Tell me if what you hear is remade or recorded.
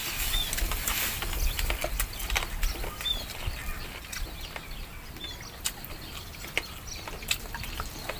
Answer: recorded